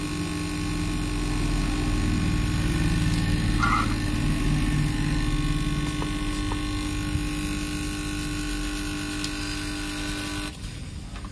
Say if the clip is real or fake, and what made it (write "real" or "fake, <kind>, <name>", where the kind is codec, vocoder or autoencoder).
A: real